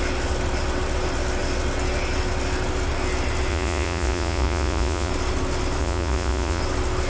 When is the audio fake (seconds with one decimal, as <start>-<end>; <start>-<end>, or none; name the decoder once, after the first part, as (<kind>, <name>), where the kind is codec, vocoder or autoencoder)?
3.5-5.1 (vocoder, Vocos); 5.8-6.6